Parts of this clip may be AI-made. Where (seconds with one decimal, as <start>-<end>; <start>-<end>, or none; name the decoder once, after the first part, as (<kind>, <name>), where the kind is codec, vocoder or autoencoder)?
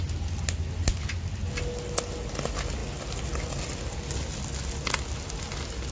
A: none